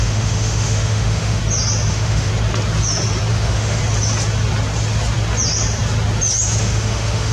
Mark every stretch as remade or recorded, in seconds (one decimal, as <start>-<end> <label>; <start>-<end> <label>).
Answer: 0.0-1.4 remade; 1.4-1.9 recorded; 1.9-2.3 remade; 2.3-3.3 recorded; 3.3-3.8 remade; 3.8-6.6 recorded; 6.6-7.3 remade